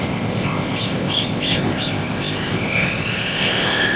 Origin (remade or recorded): remade